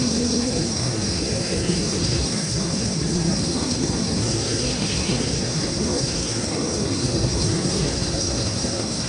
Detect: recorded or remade remade